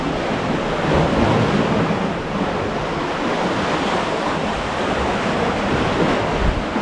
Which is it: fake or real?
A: real